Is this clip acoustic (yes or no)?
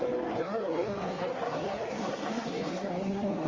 no